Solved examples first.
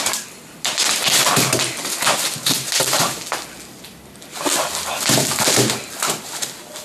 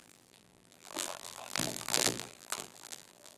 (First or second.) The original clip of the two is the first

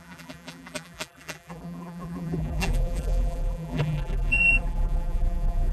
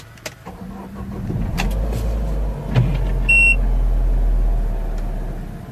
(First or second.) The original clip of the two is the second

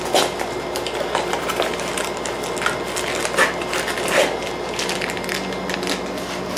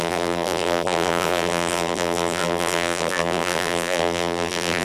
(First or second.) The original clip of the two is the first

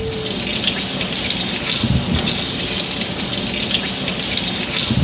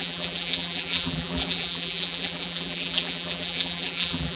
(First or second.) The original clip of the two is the first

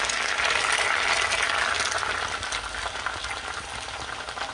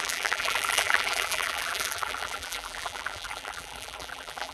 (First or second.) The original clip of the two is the first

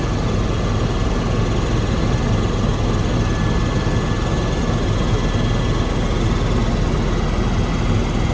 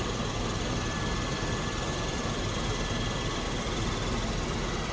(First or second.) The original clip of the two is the first